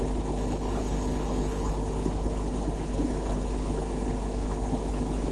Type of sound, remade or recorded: remade